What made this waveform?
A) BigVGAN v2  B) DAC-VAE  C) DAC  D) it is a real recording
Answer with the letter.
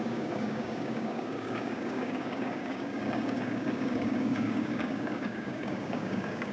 C